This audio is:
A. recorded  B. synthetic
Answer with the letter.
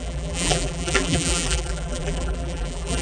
B